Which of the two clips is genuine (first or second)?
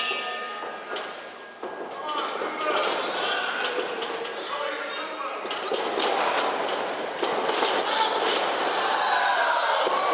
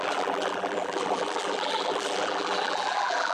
first